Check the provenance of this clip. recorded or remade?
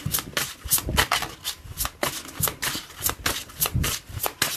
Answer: recorded